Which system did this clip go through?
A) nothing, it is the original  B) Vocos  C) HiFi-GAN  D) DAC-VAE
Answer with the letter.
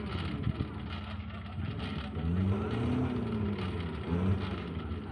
A